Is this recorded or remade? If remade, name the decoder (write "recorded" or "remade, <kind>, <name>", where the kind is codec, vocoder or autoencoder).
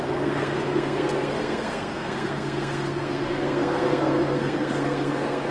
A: remade, codec, SNAC